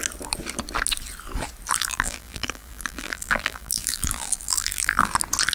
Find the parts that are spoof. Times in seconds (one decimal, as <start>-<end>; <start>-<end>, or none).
1.8-5.1